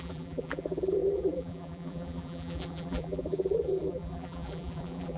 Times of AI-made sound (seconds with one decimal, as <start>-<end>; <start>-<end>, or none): 0.0-5.2